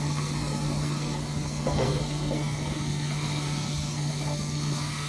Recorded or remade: remade